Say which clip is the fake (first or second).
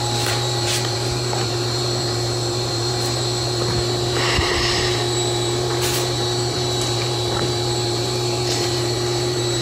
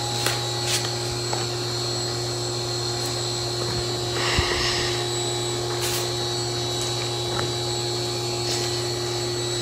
first